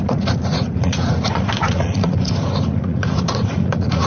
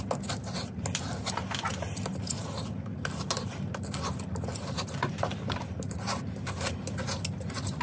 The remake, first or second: first